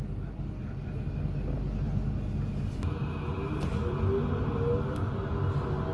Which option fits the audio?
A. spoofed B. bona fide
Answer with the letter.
B